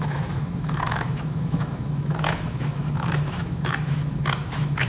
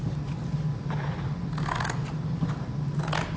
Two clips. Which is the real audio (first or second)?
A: second